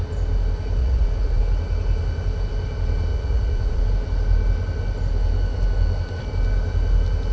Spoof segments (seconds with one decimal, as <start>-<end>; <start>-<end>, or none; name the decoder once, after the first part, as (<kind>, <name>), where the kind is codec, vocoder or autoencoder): 0.8-1.4 (vocoder, Vocos); 3.1-3.8